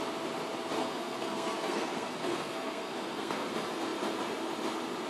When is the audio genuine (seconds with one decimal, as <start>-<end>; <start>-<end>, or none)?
0.0-0.8; 3.5-5.1